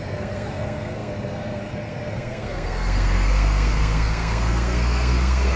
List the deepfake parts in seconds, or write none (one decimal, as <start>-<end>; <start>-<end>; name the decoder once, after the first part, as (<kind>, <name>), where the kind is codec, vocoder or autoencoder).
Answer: 0.0-5.6 (codec, SNAC)